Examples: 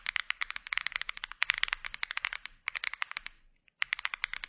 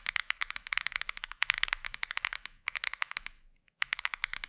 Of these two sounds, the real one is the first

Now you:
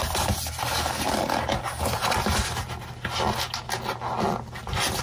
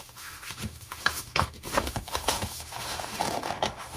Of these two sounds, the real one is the first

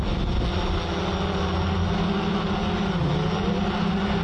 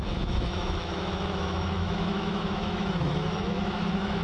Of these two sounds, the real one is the first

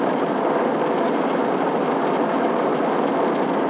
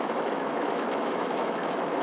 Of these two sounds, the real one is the first